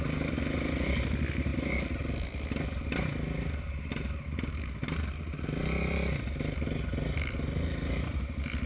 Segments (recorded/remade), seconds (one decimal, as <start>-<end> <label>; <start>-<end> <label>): 0.0-8.7 recorded